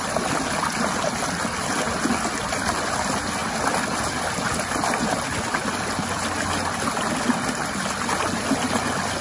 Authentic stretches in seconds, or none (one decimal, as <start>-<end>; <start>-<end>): 0.0-9.2